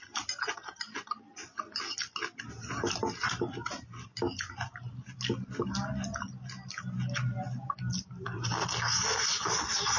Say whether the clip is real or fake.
real